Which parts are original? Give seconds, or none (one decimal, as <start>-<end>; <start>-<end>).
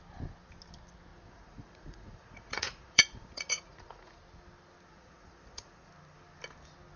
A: 0.0-1.1; 4.2-4.9; 5.9-7.0